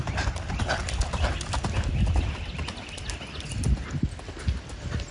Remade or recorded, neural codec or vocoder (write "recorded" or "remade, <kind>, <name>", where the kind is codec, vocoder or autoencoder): recorded